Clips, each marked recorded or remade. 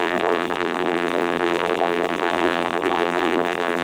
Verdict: remade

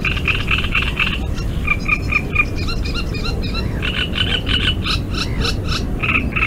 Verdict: recorded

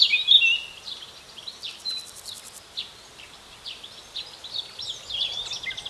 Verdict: remade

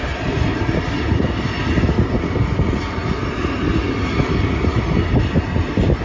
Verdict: recorded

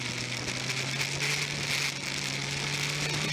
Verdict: recorded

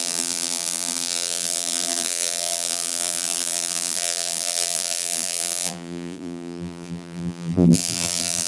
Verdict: remade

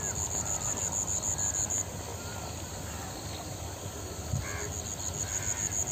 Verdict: recorded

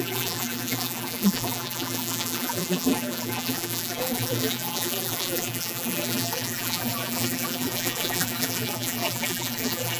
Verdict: remade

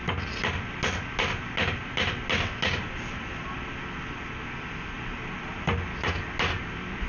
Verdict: recorded